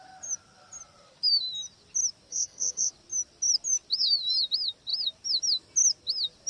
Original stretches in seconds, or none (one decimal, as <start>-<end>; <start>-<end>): 0.0-2.3; 2.9-6.5